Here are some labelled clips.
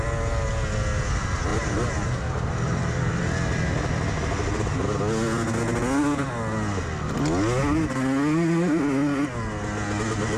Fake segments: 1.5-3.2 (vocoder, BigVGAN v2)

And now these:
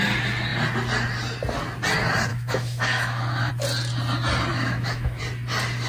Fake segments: 2.3-3.5 (autoencoder, DAC-VAE); 4.5-5.2